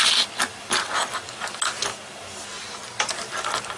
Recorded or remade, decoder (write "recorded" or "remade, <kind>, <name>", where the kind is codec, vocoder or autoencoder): recorded